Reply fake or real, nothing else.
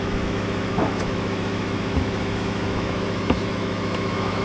fake